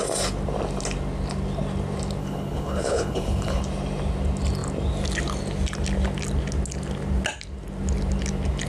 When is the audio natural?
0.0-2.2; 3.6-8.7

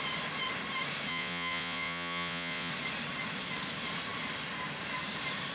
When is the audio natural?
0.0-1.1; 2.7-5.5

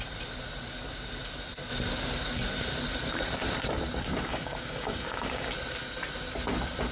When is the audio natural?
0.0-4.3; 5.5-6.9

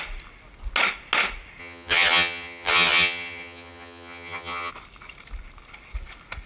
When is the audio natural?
0.0-1.6; 4.7-6.5

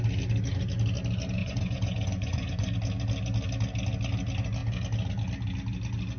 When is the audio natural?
0.0-1.4; 2.7-6.2